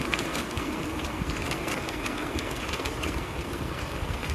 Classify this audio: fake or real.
fake